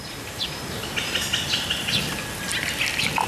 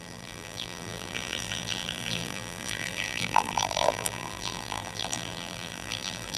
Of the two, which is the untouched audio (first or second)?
first